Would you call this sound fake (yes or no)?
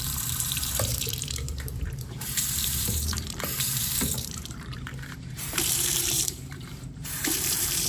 yes